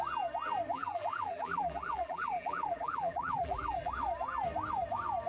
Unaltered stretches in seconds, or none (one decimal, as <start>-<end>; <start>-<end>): 0.0-0.7; 3.9-5.3